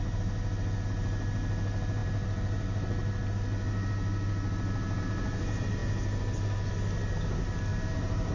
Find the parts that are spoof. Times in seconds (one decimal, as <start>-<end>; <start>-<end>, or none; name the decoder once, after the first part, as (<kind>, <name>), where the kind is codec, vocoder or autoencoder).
7.7-8.3 (vocoder, BigVGAN v2)